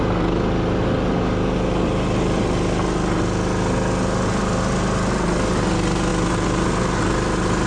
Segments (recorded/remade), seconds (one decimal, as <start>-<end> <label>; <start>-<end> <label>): 0.0-7.7 recorded